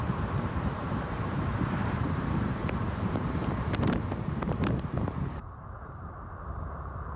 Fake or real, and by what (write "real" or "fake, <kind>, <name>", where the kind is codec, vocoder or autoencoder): fake, vocoder, BigVGAN v2